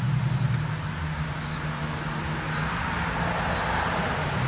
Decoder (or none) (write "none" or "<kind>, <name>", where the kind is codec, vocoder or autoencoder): none